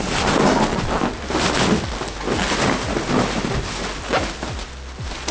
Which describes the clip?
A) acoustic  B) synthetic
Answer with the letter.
A